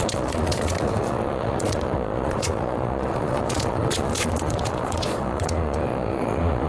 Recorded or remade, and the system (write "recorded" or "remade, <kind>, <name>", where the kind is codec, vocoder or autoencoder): remade, vocoder, Vocos